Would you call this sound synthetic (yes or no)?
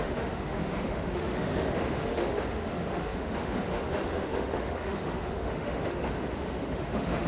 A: yes